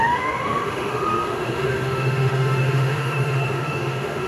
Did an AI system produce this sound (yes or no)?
yes